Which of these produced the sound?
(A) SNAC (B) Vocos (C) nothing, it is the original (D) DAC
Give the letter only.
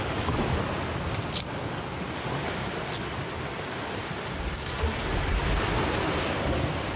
C